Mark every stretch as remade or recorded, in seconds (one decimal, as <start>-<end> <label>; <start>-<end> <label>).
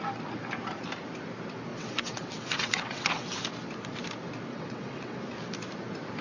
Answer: 0.0-1.7 recorded; 1.7-3.4 remade; 3.4-4.5 recorded; 4.5-5.2 remade; 5.2-6.2 recorded